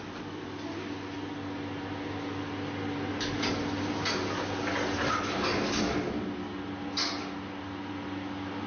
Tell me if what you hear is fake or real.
real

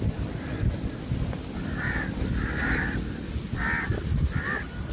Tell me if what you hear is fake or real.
real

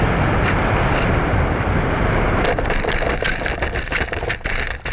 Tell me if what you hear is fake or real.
real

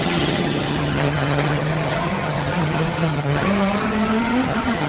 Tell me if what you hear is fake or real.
fake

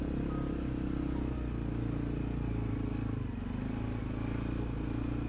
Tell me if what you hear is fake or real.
real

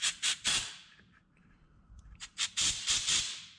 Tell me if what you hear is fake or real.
fake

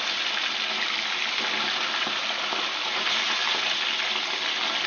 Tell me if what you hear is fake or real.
real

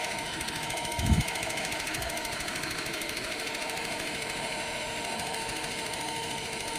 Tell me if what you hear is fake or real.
fake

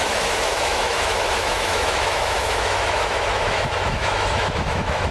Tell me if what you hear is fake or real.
fake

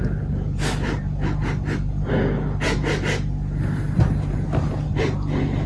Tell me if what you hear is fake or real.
real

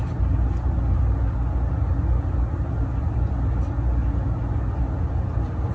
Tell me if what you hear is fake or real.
real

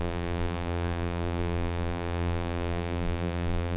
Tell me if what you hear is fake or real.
fake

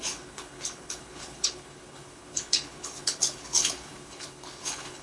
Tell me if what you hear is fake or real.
fake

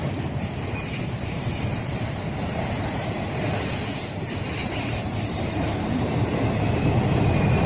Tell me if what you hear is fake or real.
fake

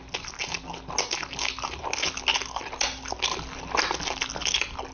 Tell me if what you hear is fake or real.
real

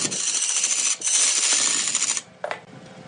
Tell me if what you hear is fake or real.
real